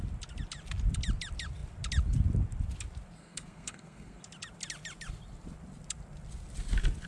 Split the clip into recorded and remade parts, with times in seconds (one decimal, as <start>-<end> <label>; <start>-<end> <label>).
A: 0.0-3.2 recorded; 3.2-4.2 remade; 4.2-7.1 recorded